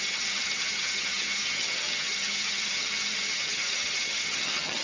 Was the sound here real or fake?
fake